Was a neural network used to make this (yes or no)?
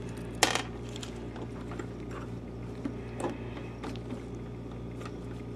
no